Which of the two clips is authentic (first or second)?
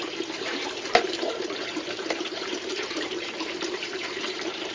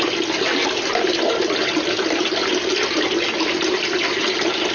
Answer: second